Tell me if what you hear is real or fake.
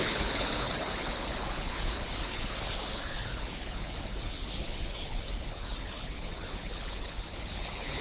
fake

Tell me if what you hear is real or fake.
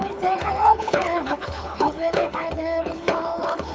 fake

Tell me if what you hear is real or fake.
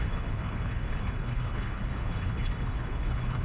fake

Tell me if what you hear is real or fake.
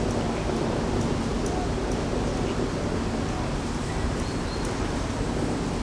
real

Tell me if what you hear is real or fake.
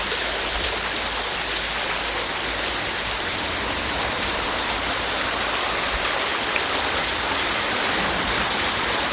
real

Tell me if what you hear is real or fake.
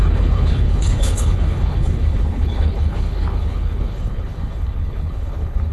fake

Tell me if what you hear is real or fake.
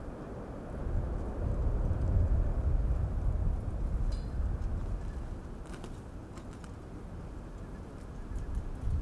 real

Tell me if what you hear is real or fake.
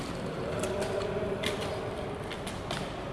real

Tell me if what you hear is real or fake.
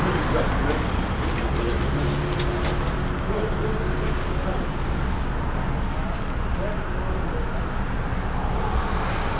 real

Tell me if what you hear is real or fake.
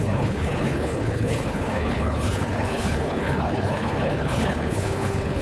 fake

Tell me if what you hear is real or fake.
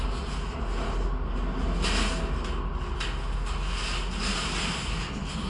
real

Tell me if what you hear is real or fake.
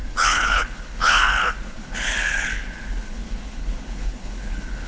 fake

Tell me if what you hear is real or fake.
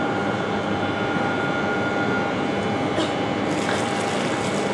real